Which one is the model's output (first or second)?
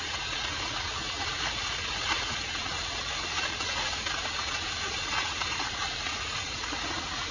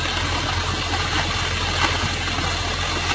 first